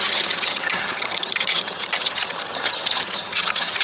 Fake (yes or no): yes